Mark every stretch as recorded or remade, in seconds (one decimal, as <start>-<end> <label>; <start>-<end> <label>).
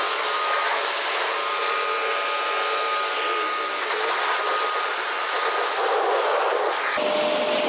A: 0.0-7.7 recorded